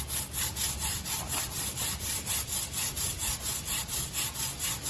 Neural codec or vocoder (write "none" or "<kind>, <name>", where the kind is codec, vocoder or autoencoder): none